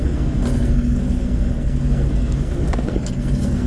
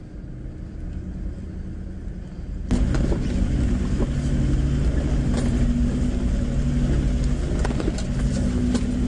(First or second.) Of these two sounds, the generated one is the first